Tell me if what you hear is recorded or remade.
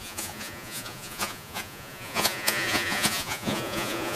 remade